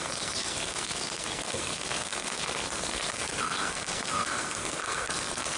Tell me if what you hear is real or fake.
fake